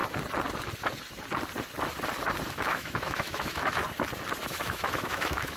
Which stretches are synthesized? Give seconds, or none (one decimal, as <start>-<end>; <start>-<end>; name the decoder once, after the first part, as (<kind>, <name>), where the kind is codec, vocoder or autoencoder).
2.5-3.8 (autoencoder, DAC-VAE); 4.4-5.6